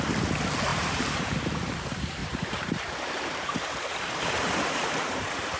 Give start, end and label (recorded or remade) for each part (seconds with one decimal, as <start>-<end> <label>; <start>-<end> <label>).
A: 0.0-0.7 recorded; 0.7-1.8 remade; 1.8-2.2 recorded; 2.2-5.6 remade